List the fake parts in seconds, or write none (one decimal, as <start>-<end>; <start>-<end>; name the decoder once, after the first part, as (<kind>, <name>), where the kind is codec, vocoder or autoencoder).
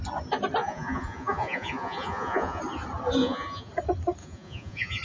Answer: 0.6-2.6 (vocoder, Vocos); 3.2-3.7; 4.2-5.0